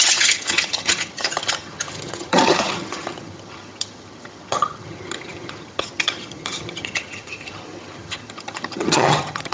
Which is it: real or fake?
fake